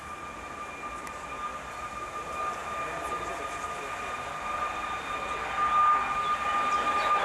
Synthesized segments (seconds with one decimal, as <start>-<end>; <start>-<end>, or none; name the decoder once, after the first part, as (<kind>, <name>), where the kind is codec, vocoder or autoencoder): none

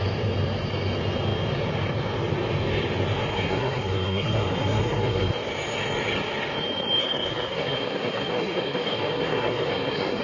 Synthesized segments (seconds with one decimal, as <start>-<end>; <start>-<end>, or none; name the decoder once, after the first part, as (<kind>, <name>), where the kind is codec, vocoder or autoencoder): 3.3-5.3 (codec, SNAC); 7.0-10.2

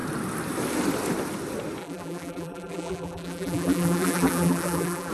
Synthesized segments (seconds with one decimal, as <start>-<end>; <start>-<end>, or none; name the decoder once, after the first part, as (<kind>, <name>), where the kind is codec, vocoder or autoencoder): 1.8-5.1 (vocoder, BigVGAN v2)

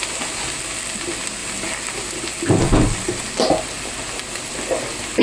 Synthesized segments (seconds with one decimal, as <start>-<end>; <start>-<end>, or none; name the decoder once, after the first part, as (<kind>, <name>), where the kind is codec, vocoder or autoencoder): none

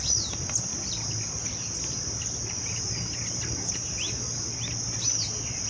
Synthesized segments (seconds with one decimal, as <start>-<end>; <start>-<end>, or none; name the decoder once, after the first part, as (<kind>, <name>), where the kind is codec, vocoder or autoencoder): none